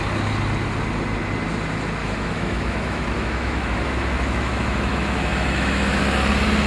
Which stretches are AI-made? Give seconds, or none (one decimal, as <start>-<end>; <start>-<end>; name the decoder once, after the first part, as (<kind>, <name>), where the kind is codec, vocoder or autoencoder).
2.0-6.0 (autoencoder, DAC-VAE)